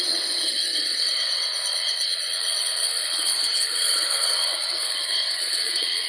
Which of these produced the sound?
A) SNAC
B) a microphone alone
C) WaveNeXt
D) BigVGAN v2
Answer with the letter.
C